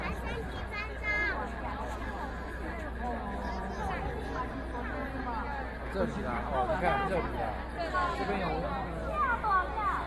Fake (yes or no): no